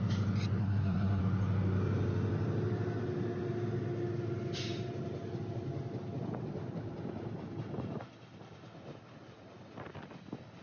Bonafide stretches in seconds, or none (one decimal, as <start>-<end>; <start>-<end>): 0.0-0.6; 1.2-10.6